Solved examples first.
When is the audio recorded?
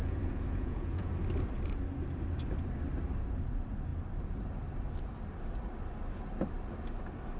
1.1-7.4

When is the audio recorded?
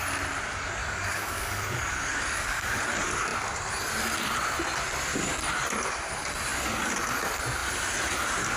0.0-0.8; 2.8-8.6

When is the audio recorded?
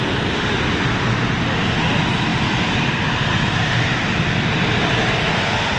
0.0-5.8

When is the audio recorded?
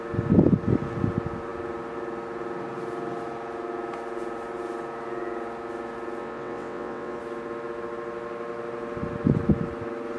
0.0-6.2; 7.2-10.2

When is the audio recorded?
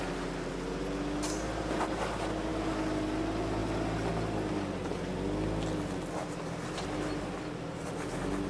0.0-8.5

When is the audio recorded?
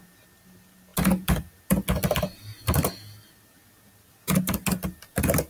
0.0-5.5